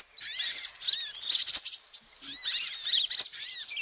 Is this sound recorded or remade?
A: recorded